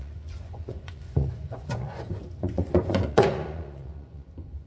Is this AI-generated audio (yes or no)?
yes